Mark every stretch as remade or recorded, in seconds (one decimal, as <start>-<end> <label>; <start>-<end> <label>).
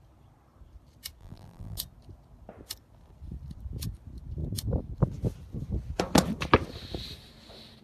0.0-1.2 recorded; 1.2-1.8 remade; 1.8-7.8 recorded